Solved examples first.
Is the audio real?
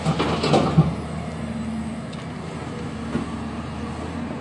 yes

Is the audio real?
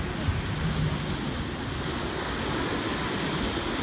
yes